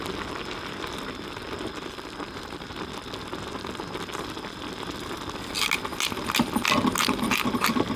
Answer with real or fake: real